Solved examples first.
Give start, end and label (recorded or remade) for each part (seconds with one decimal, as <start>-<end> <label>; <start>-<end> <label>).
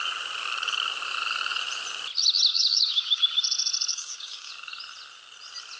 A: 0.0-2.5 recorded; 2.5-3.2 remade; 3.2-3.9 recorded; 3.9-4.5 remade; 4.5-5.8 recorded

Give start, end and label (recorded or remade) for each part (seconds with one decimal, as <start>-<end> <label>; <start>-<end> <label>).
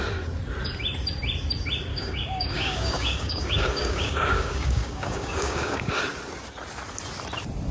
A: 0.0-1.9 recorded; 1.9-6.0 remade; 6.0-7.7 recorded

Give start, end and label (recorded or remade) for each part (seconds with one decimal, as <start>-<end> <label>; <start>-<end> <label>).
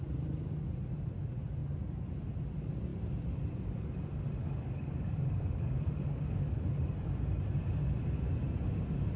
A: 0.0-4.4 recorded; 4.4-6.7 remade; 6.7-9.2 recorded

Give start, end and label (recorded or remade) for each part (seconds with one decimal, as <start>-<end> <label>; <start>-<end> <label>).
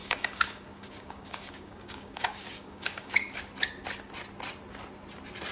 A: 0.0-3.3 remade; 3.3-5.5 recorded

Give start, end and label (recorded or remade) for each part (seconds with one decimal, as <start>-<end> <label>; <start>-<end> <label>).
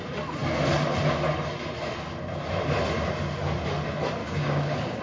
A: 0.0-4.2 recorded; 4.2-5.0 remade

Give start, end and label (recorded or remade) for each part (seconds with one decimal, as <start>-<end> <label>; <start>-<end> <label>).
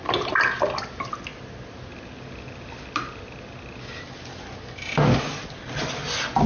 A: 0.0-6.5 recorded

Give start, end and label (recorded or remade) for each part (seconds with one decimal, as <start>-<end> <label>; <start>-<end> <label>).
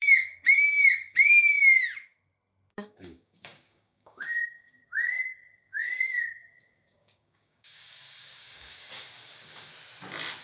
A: 0.0-1.7 remade; 1.7-2.7 recorded; 2.7-9.7 remade; 9.7-10.4 recorded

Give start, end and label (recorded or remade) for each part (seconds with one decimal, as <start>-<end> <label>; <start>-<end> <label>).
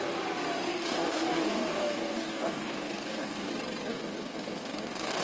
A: 0.0-0.7 recorded; 0.7-3.5 remade; 3.5-3.9 recorded; 3.9-5.2 remade